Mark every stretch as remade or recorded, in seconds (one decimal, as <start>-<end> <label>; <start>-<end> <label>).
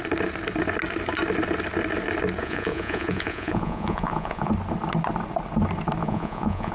0.0-2.4 recorded; 2.4-4.5 remade; 4.5-6.0 recorded; 6.0-6.7 remade